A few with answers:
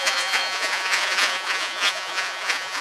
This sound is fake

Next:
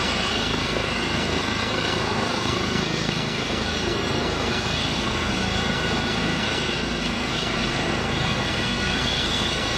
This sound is fake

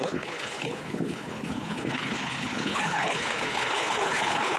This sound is fake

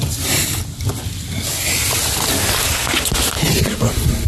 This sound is real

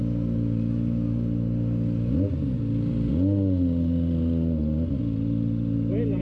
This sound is real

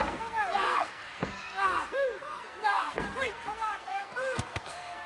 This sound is fake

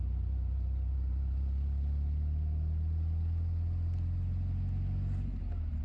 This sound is real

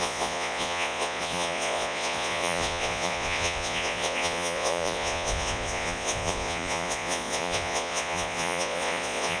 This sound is fake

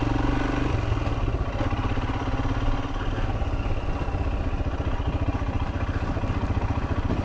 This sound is real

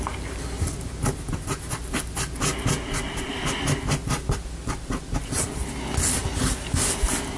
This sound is real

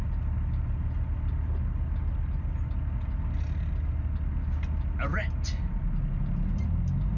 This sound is real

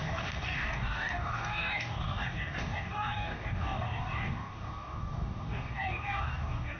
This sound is fake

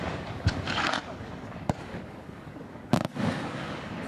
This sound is fake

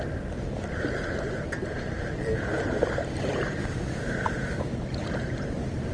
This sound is real